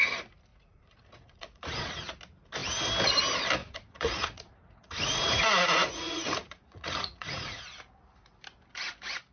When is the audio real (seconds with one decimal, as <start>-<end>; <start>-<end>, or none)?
0.0-0.5; 2.2-3.6; 7.6-9.3